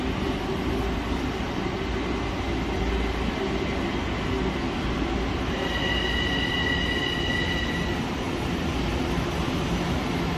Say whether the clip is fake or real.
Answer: real